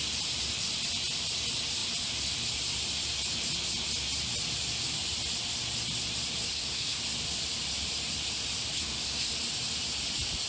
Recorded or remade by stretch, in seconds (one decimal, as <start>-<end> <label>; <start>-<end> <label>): 0.0-6.5 recorded; 6.5-7.0 remade; 7.0-8.7 recorded; 8.7-9.3 remade; 9.3-10.5 recorded